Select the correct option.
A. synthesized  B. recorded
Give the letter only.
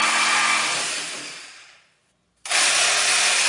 B